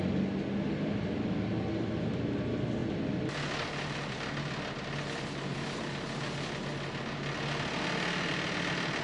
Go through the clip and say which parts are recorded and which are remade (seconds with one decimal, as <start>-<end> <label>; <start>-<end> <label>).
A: 0.0-9.0 recorded